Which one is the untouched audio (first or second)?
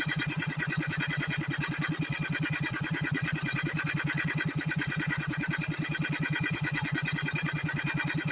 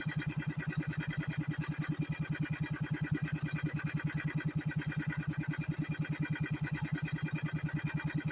second